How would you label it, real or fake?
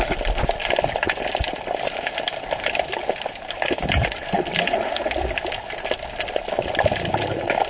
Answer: real